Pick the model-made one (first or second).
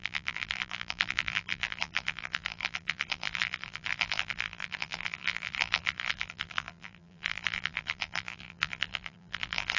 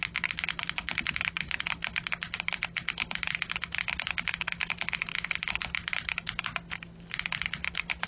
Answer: first